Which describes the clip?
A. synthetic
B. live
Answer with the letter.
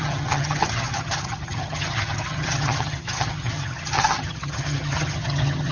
A